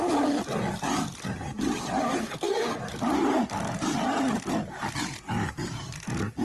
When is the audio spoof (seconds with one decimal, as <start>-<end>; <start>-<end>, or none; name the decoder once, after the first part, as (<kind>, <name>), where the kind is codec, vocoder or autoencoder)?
2.2-2.8 (codec, SNAC)